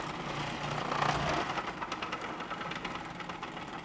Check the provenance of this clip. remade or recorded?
recorded